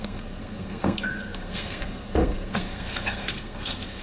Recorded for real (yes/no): no